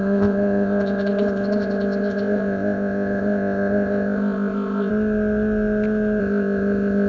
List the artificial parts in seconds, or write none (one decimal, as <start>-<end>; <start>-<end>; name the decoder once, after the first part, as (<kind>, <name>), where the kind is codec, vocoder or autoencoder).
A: 0.0-4.9 (codec, ZipCodec); 6.2-7.1